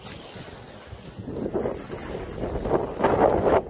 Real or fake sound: real